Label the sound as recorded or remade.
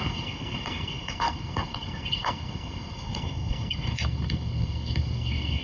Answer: remade